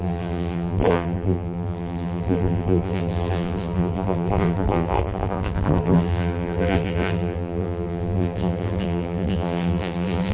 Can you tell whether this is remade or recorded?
remade